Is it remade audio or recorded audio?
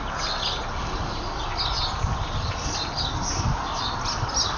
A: recorded